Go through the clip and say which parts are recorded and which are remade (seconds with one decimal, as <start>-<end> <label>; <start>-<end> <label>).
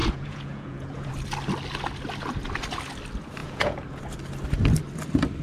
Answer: 0.0-1.1 remade; 1.1-3.4 recorded; 3.4-4.0 remade; 4.0-5.4 recorded